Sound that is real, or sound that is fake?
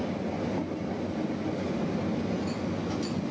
real